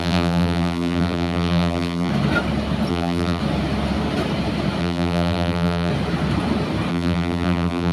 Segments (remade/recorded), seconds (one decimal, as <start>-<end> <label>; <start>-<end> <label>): 0.0-2.1 remade; 2.1-2.9 recorded; 2.9-3.4 remade; 3.4-4.8 recorded; 4.8-5.9 remade; 5.9-6.9 recorded; 6.9-7.9 remade